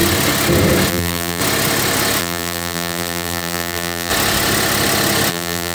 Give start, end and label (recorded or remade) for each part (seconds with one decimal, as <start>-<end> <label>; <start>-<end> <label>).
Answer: 0.0-0.9 recorded; 0.9-1.4 remade; 1.4-2.2 recorded; 2.2-4.1 remade; 4.1-5.3 recorded; 5.3-5.7 remade